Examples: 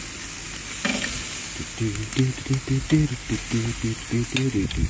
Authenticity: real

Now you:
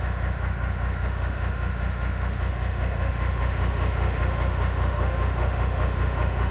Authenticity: fake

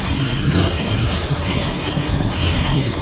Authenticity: fake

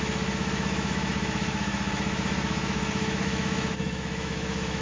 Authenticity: fake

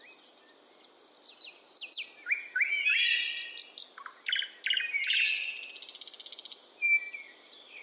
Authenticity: real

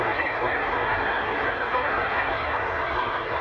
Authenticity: fake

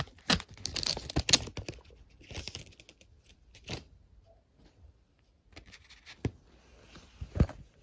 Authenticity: real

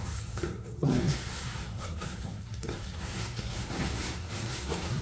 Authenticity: fake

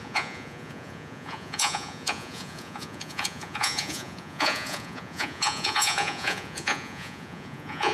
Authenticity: fake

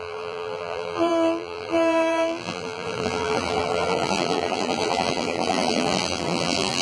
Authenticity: fake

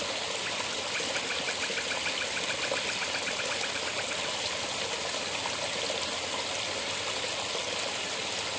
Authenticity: real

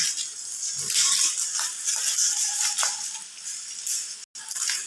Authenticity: real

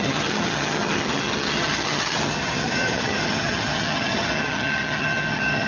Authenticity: fake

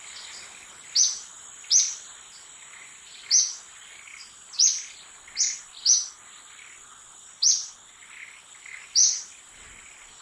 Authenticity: real